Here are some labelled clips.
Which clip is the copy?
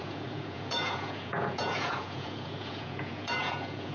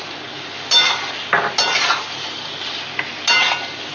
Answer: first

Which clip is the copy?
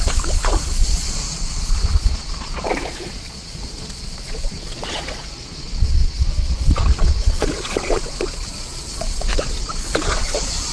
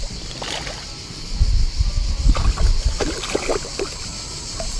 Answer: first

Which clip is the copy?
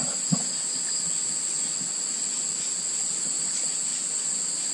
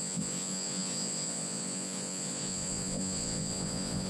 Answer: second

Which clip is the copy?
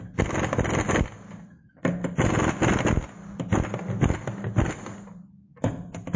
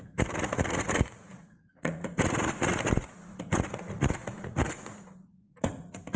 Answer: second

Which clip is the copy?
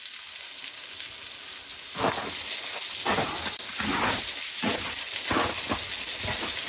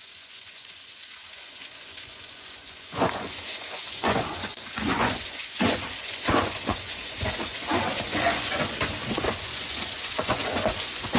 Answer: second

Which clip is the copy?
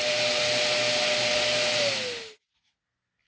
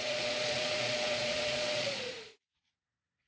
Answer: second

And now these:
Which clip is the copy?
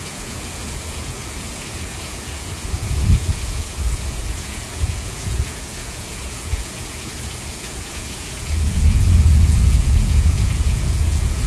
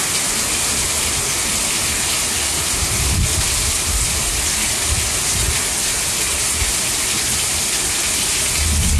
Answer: first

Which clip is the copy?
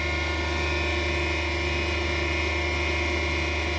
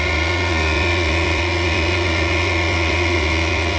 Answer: second